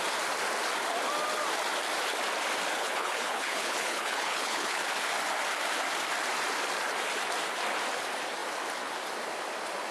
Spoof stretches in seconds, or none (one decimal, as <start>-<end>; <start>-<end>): 2.8-4.8